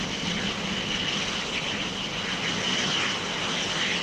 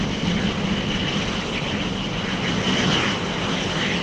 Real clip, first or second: first